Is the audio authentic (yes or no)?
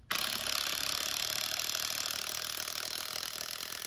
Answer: yes